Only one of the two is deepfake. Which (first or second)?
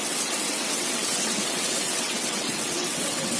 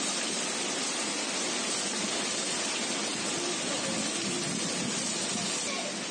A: first